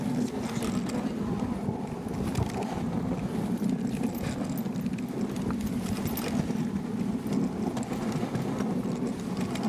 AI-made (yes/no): no